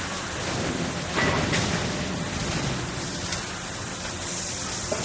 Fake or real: real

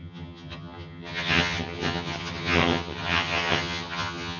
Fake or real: fake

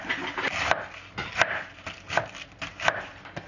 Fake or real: real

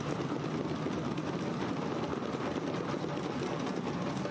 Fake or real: real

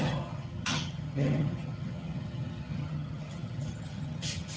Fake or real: fake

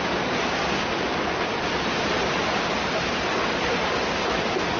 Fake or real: real